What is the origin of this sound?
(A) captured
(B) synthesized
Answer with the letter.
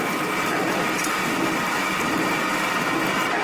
A